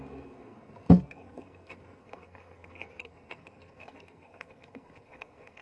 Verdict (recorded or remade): remade